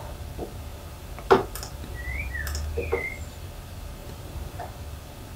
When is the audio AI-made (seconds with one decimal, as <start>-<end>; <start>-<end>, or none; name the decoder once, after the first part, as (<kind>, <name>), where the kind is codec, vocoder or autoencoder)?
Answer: 0.7-2.3 (vocoder, BigVGAN v2); 4.0-4.6